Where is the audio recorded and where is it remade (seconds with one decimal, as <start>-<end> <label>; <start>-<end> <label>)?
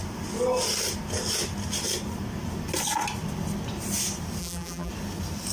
0.0-4.4 recorded; 4.4-4.9 remade; 4.9-5.5 recorded